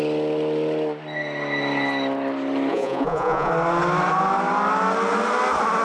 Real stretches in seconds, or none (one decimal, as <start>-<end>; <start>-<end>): 0.0-2.7; 3.5-5.8